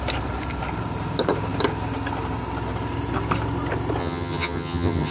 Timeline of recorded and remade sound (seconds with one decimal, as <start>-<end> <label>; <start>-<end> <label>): 0.0-4.0 recorded; 4.0-5.1 remade